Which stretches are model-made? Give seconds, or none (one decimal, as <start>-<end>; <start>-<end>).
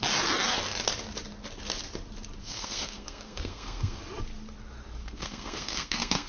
2.4-4.0; 5.0-6.3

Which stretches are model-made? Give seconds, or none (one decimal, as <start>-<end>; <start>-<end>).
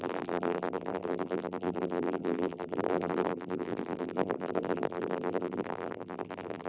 0.0-6.7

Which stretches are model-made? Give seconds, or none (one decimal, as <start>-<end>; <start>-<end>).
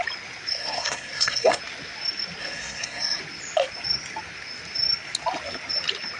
0.5-1.6; 2.4-3.2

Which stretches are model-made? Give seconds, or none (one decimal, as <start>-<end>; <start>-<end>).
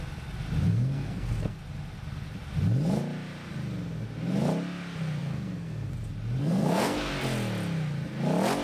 0.7-1.6; 5.2-5.9; 6.4-7.1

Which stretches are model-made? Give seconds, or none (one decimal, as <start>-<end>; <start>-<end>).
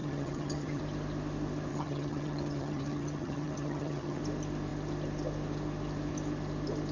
0.0-0.8; 1.7-4.2